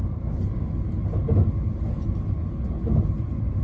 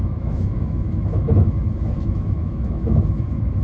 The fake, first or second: second